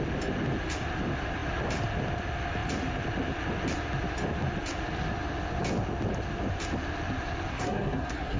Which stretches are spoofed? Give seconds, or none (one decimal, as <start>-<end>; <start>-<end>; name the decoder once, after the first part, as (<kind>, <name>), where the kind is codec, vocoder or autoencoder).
7.5-8.4 (codec, SNAC)